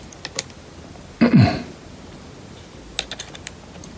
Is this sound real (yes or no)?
yes